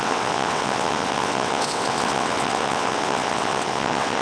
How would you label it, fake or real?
fake